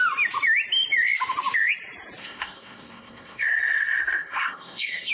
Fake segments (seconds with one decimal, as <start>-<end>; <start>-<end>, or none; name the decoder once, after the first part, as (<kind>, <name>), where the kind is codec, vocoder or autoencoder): 2.2-5.1 (codec, SNAC)